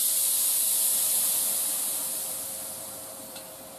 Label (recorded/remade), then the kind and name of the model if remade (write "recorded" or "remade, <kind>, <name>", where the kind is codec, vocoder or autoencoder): remade, vocoder, BigVGAN v2